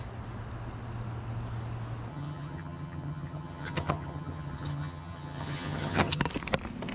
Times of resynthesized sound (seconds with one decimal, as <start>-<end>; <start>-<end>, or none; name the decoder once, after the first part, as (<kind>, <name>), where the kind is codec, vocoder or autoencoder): 2.1-6.2 (vocoder, HiFi-GAN)